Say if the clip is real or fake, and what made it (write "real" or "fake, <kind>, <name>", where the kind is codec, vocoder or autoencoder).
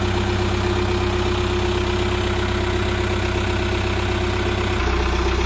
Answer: real